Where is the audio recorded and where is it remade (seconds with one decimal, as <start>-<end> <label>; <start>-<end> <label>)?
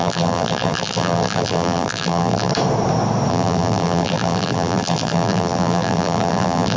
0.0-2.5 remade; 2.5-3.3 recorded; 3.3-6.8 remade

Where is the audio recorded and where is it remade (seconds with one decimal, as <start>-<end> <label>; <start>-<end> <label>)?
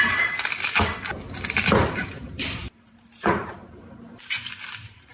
0.0-1.8 recorded; 1.8-5.1 remade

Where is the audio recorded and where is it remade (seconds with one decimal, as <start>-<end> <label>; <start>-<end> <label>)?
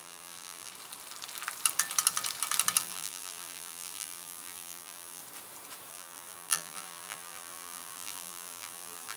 0.0-0.7 remade; 0.7-2.8 recorded; 2.8-5.2 remade; 5.2-5.9 recorded; 5.9-9.2 remade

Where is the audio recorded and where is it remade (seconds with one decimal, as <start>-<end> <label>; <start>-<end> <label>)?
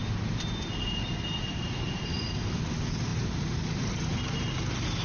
0.0-3.1 recorded; 3.1-4.2 remade; 4.2-5.0 recorded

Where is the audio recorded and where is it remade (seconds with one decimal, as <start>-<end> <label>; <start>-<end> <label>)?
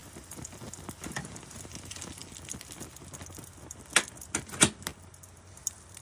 0.0-6.0 recorded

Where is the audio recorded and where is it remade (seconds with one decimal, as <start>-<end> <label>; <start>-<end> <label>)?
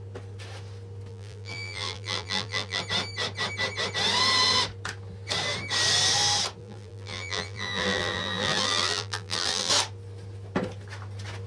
0.0-1.1 recorded; 1.1-2.8 remade; 2.8-6.6 recorded; 6.6-9.7 remade; 9.7-11.5 recorded